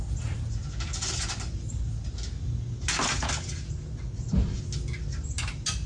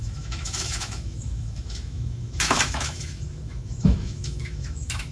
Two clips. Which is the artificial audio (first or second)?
second